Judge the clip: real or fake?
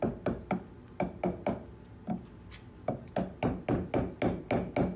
real